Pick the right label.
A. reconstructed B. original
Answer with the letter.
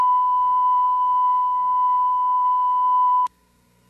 A